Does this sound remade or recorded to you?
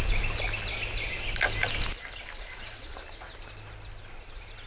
recorded